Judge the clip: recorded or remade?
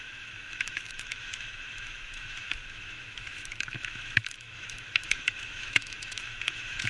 remade